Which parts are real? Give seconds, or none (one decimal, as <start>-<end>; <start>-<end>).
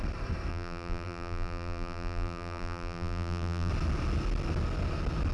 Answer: 0.0-0.5; 3.7-5.3